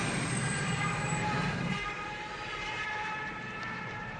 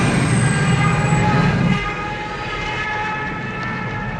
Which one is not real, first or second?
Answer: first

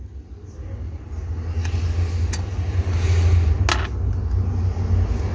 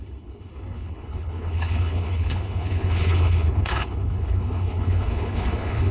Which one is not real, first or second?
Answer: second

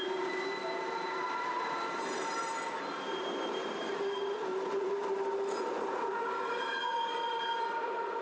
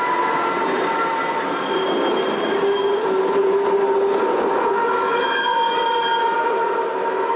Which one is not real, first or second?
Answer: first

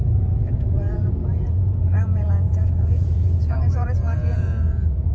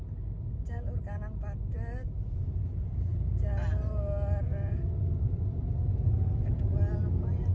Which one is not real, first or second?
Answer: first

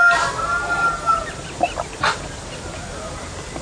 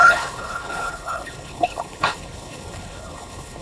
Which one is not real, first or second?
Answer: second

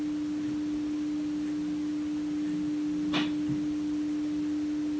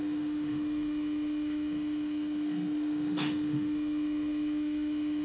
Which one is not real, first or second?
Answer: second